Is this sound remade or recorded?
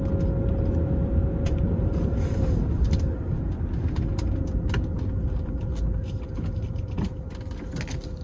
recorded